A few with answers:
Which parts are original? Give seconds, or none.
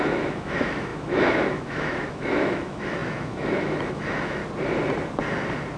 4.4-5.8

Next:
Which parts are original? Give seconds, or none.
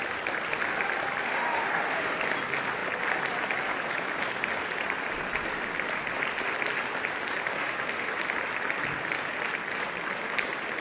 0.0-1.2; 2.2-7.5; 8.1-10.8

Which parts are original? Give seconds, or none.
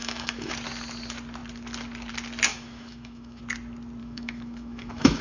0.5-2.5; 3.4-4.0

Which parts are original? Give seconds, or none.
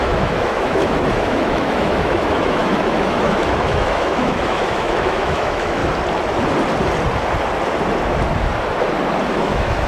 5.8-9.3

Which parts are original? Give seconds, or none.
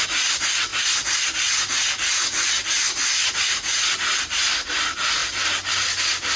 0.0-6.4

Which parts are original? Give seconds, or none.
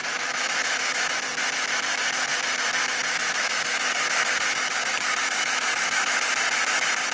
1.1-3.0; 6.3-7.1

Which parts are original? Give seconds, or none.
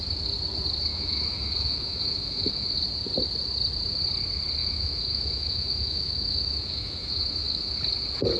0.0-0.9; 2.8-4.6; 7.7-8.4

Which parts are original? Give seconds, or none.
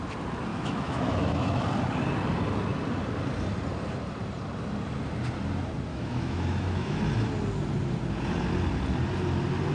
0.0-0.5; 1.6-5.9; 7.0-9.7